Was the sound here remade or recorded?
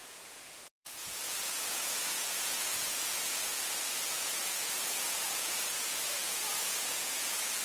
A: remade